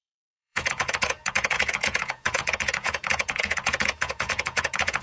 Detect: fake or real fake